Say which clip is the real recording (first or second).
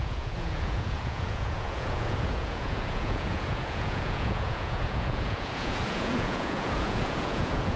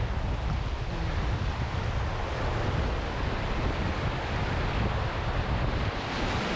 second